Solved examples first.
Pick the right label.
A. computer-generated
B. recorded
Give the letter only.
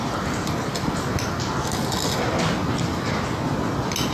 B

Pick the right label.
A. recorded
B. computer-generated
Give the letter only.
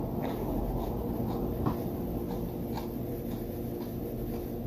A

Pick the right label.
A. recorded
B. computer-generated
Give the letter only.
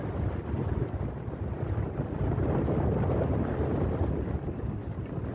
A